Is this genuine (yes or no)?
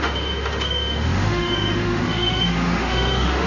no